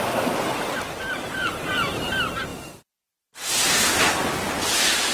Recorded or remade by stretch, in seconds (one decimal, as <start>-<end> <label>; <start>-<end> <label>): 0.0-5.1 recorded